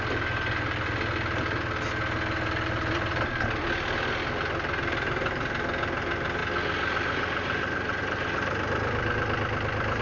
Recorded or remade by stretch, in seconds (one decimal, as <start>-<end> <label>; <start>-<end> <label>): 0.0-10.0 recorded